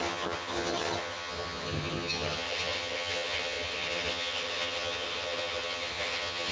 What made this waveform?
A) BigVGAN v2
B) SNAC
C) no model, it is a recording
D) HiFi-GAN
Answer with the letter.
D